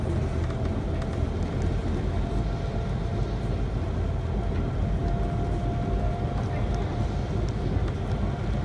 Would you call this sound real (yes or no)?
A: yes